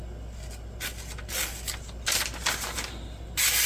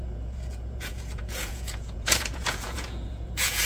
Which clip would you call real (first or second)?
first